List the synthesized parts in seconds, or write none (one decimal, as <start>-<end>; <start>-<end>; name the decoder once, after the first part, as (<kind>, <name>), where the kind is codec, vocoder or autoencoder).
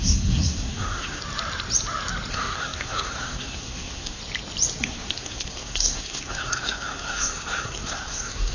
0.0-1.2 (codec, SNAC); 2.3-4.2; 4.8-8.5